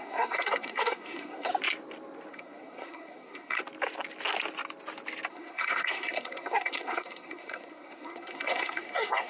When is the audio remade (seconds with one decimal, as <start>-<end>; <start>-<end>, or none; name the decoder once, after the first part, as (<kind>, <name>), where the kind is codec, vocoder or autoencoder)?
0.0-1.5 (codec, SNAC); 2.3-3.6; 5.3-9.3